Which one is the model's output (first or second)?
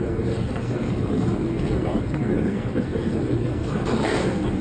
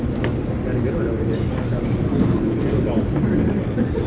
first